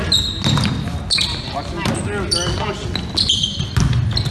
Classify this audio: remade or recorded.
recorded